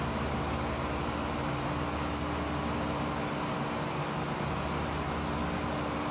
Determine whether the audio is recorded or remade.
remade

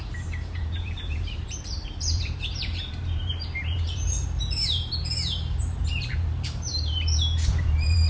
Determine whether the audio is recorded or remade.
remade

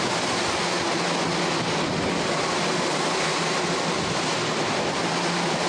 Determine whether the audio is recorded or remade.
recorded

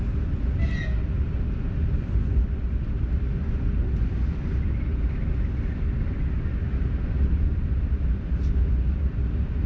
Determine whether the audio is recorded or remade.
recorded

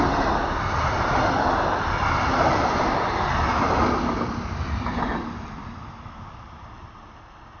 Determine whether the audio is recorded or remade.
recorded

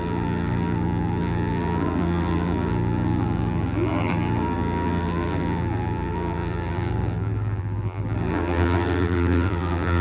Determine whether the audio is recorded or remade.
remade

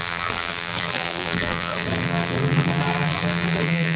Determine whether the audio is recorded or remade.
remade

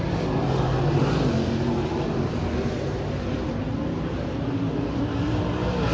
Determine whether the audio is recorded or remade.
remade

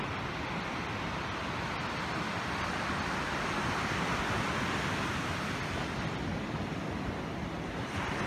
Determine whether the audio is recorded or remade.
recorded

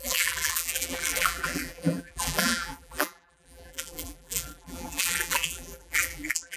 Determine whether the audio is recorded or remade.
remade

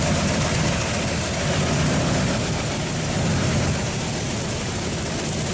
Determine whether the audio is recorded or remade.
recorded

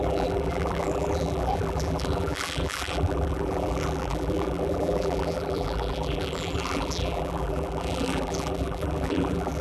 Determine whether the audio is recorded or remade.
remade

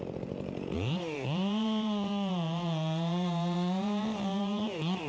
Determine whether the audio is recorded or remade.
remade